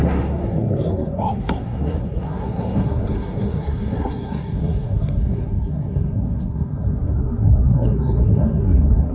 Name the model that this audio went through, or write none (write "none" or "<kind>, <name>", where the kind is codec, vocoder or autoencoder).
codec, SNAC